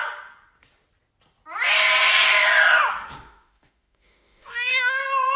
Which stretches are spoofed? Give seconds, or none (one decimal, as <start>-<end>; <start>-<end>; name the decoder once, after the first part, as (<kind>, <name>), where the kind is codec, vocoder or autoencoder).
2.9-5.0 (autoencoder, DAC-VAE)